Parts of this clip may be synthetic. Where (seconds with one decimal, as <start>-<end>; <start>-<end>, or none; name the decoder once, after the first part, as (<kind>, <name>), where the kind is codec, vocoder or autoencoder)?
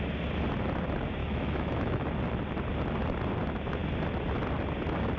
1.2-2.1 (autoencoder, DAC-VAE)